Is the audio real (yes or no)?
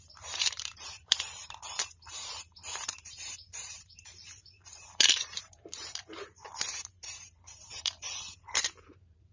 no